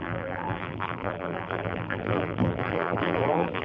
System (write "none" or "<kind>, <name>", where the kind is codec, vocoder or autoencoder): vocoder, BigVGAN v2